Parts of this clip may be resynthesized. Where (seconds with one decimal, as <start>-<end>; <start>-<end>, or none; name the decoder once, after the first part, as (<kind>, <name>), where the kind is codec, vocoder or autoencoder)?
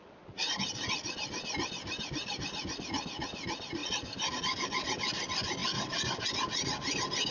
0.0-5.6 (vocoder, BigVGAN v2); 6.2-7.3